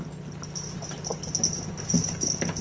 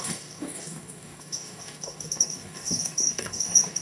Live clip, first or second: first